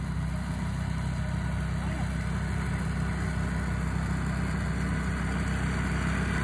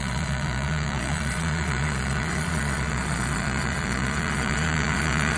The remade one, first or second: second